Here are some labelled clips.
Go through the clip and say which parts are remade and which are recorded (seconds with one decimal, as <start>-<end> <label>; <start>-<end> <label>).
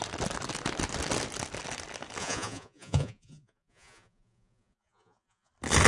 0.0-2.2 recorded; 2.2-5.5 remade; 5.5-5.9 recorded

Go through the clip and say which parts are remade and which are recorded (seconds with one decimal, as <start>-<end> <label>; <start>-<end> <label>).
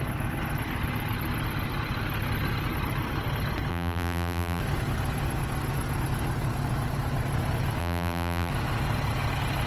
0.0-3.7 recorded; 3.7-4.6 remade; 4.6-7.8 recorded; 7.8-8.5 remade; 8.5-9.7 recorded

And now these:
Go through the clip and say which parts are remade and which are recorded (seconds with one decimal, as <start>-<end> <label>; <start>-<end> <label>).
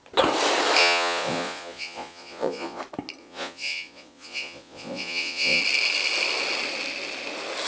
0.0-0.8 recorded; 0.8-2.8 remade; 2.8-3.2 recorded; 3.2-5.6 remade; 5.6-7.7 recorded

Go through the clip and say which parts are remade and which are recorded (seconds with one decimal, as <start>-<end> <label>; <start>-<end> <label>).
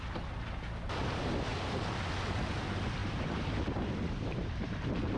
0.0-1.5 recorded; 1.5-2.3 remade; 2.3-3.0 recorded; 3.0-5.2 remade